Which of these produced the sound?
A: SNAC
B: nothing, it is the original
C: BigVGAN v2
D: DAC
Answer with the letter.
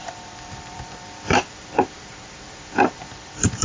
C